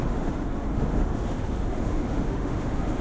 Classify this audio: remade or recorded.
remade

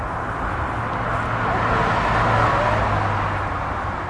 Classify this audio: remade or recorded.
recorded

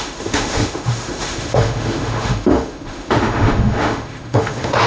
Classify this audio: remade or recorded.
remade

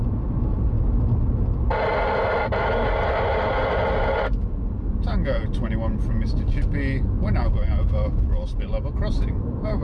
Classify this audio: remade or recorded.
recorded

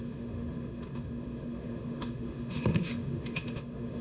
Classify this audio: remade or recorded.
remade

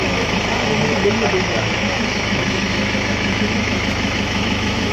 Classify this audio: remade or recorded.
remade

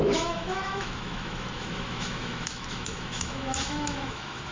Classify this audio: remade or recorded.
remade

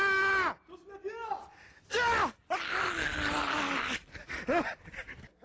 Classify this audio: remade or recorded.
recorded